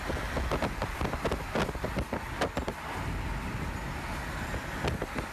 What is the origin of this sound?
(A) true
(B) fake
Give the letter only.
A